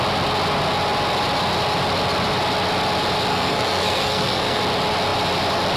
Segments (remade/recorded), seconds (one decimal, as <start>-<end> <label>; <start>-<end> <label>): 0.0-3.3 recorded; 3.3-4.6 remade; 4.6-5.8 recorded